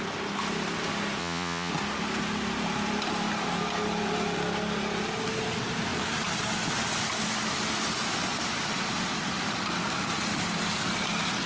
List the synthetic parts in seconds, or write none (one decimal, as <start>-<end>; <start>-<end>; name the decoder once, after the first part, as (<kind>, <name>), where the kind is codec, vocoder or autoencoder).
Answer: 1.2-1.7 (vocoder, Vocos)